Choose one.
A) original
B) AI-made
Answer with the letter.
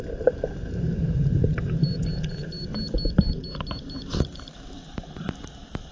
B